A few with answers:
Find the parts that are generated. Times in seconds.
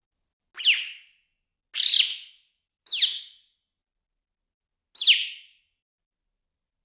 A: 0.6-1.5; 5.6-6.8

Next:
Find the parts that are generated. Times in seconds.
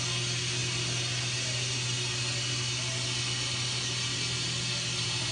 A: none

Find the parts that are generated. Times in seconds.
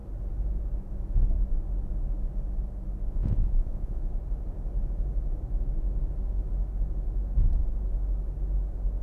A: 3.1-4.0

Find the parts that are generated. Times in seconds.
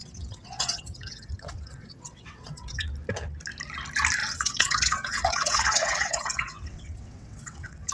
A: 0.0-2.9; 4.2-7.9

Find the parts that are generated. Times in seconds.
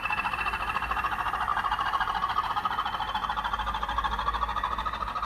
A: none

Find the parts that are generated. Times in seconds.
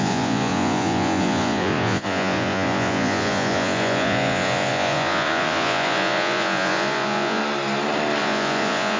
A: 0.0-7.4; 8.2-9.0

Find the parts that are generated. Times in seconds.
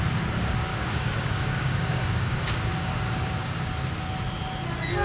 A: 0.7-3.7